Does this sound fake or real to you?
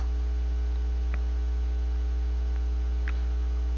real